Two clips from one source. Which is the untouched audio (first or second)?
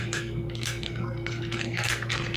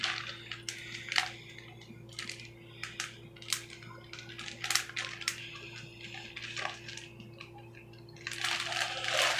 second